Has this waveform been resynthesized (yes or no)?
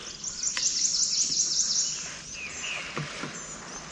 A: no